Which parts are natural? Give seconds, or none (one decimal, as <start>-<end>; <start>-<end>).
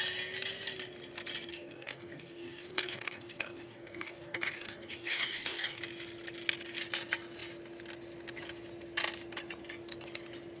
0.0-1.5; 5.8-10.6